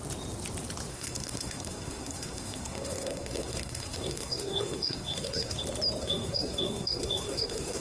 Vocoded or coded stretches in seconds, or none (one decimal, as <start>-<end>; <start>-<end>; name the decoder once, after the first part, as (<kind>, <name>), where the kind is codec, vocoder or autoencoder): 0.9-5.6 (codec, SNAC); 6.0-7.8